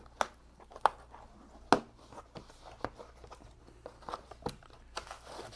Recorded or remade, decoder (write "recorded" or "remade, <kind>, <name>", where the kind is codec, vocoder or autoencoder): recorded